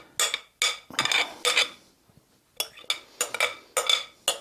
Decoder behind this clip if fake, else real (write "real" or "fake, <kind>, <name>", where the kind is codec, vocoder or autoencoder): real